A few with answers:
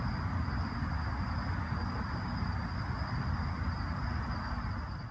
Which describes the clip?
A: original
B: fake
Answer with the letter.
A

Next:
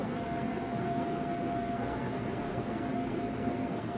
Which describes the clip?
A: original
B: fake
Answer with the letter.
B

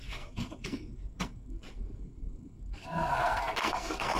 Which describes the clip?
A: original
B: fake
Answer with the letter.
B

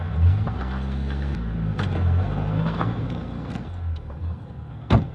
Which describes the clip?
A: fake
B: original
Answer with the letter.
A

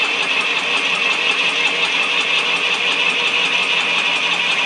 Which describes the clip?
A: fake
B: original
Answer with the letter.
B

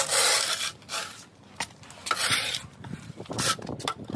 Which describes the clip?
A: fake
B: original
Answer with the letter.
B